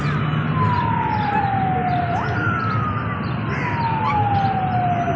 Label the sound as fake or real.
real